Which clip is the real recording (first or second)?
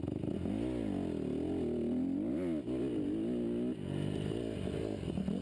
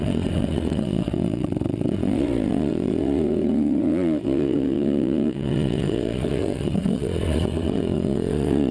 first